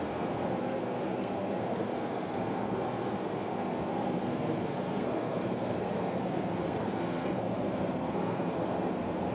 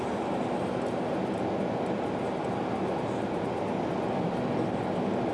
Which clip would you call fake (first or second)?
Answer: first